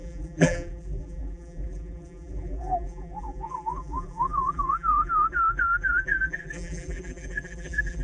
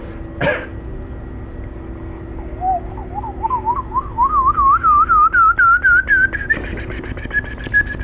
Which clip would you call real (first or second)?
second